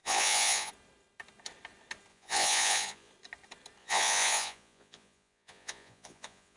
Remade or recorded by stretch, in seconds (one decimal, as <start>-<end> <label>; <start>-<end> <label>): 0.0-0.7 remade; 0.7-2.1 recorded; 2.1-3.1 remade; 3.1-3.8 recorded; 3.8-6.6 remade